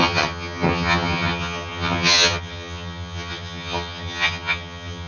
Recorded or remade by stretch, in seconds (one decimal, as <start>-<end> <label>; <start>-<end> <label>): 0.0-5.1 remade